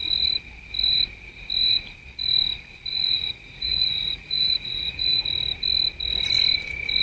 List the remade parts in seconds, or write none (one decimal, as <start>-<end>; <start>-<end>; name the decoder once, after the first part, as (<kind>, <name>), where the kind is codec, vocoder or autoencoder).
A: 2.9-5.2 (vocoder, Vocos)